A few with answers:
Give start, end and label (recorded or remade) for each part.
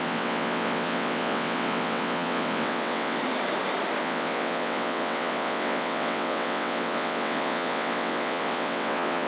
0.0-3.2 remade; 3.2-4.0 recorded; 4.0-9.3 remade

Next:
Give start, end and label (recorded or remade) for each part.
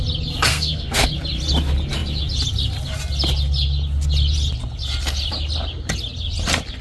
0.0-0.5 recorded; 0.5-1.1 remade; 1.1-6.8 recorded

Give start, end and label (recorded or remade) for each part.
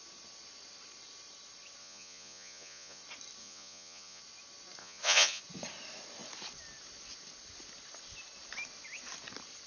0.0-1.8 recorded; 1.8-3.0 remade; 3.0-3.4 recorded; 3.4-4.2 remade; 4.2-4.8 recorded; 4.8-5.4 remade; 5.4-9.7 recorded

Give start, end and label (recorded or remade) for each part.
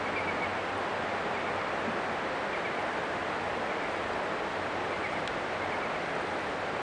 0.0-6.8 recorded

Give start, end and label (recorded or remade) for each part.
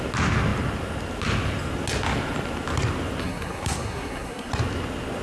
0.0-3.2 recorded; 3.2-4.5 remade; 4.5-5.2 recorded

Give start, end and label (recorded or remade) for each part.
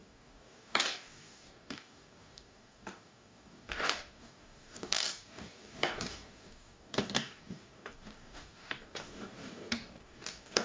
0.0-10.6 remade